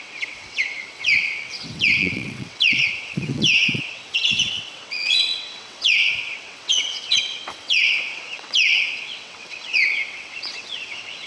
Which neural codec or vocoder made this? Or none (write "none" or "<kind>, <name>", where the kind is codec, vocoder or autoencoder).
vocoder, WaveNeXt